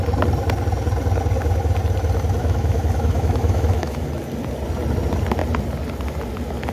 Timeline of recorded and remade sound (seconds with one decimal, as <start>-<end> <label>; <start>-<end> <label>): 0.0-2.4 recorded; 2.4-4.0 remade; 4.0-6.7 recorded